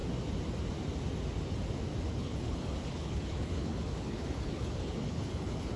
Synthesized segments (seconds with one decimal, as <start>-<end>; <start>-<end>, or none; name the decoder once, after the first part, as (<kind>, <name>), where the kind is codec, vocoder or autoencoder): 2.1-5.8 (codec, HILCodec)